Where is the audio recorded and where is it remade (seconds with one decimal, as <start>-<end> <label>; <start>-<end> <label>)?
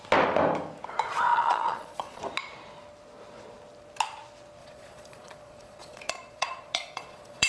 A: 0.0-1.3 recorded; 1.3-2.2 remade; 2.2-4.6 recorded; 4.6-7.5 remade